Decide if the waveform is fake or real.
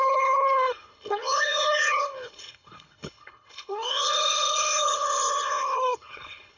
fake